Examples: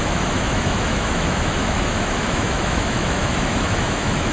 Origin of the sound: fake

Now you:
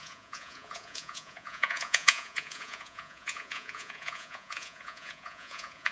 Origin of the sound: fake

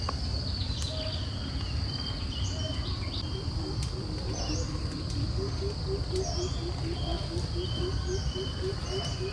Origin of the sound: real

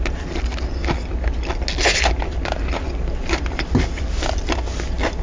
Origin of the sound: real